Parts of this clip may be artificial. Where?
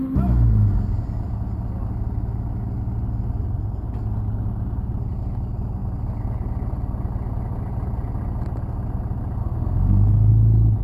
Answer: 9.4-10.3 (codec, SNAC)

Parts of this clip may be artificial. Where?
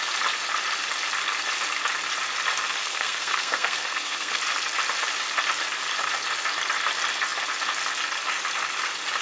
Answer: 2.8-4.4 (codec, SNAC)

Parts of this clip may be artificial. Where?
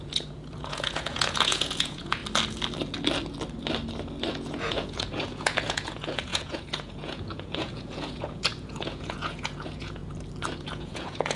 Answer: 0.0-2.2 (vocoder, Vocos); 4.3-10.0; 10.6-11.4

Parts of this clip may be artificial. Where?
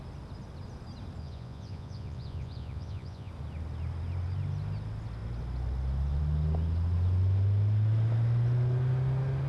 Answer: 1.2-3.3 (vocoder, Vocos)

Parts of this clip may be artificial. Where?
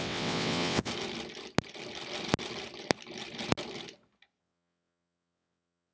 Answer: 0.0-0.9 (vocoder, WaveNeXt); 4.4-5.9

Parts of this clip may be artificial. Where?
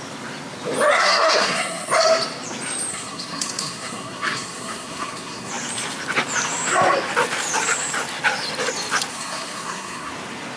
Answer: 0.9-1.9 (codec, SNAC); 2.9-5.5; 9.1-10.1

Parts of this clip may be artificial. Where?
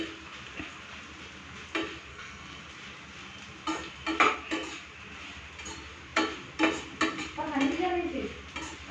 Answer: 2.1-2.6 (codec, SNAC)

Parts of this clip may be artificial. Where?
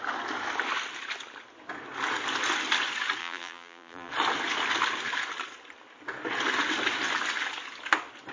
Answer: 3.2-4.1 (vocoder, BigVGAN v2)